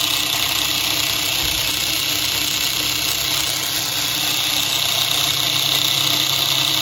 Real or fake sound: real